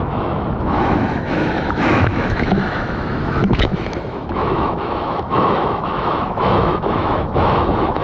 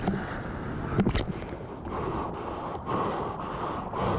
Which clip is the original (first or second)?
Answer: second